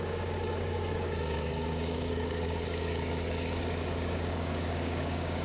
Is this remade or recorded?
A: remade